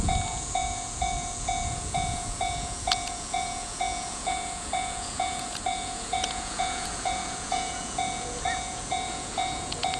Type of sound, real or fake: fake